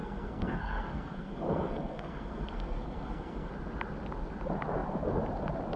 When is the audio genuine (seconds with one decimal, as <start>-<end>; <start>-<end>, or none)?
3.5-5.8